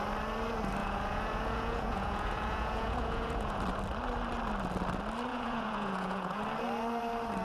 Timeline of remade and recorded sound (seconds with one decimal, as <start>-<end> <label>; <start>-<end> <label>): 0.0-0.8 recorded; 0.8-3.6 remade; 3.6-5.3 recorded; 5.3-6.4 remade; 6.4-7.4 recorded